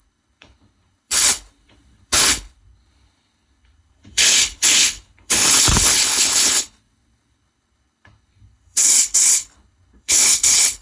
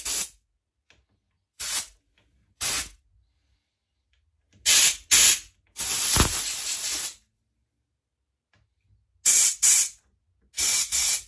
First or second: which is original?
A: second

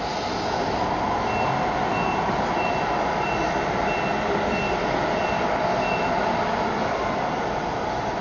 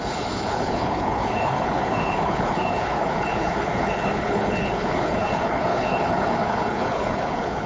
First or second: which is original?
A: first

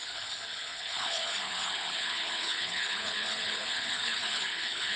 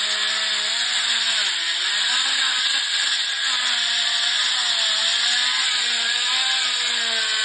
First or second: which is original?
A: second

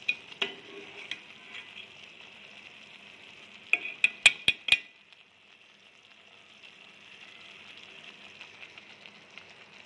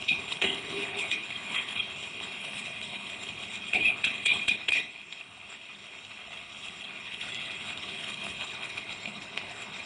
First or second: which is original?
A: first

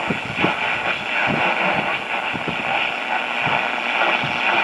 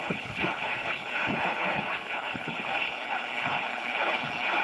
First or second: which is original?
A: first